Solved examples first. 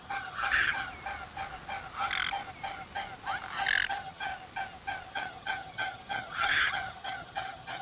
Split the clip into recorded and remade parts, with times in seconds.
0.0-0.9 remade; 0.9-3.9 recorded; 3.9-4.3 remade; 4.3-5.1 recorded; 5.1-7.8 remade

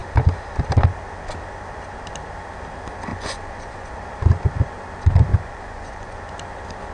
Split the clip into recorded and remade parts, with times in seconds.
0.0-3.1 recorded; 3.1-3.9 remade; 3.9-5.3 recorded; 5.3-6.3 remade; 6.3-6.9 recorded

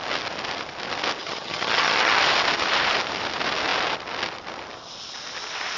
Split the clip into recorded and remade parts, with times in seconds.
0.0-1.2 recorded; 1.2-2.2 remade; 2.2-5.8 recorded

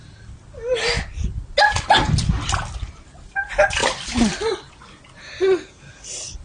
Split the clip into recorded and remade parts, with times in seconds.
0.0-3.8 recorded; 3.8-4.7 remade; 4.7-6.4 recorded